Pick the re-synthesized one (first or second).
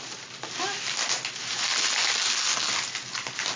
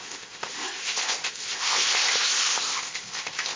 second